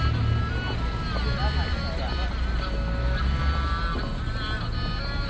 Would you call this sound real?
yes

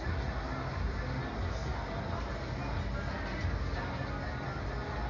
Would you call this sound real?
yes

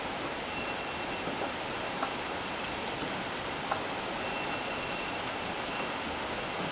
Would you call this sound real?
yes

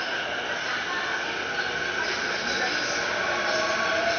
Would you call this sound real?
yes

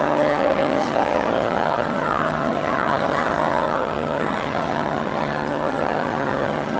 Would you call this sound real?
no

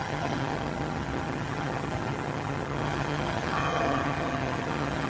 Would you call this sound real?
no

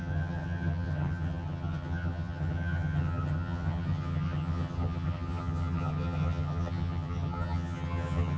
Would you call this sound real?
no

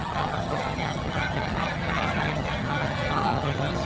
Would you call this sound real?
no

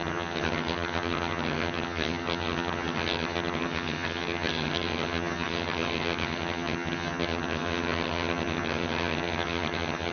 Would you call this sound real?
no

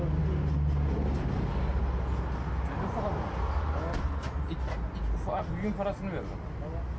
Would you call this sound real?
yes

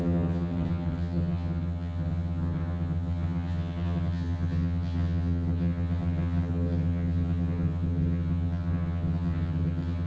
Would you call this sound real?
no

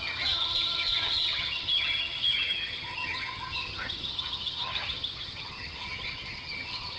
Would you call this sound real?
no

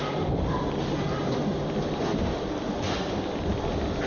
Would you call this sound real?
yes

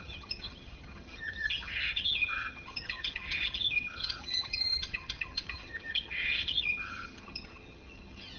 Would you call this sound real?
no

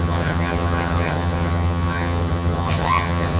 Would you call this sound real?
no